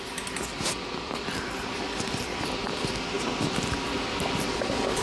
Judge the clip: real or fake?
real